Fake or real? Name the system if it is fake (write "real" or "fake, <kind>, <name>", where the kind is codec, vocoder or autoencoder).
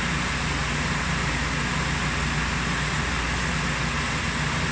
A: real